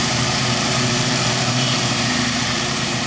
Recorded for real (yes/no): no